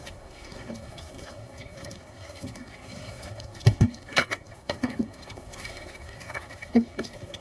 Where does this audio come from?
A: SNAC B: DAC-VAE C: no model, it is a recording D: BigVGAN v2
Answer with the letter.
A